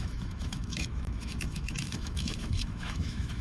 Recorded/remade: remade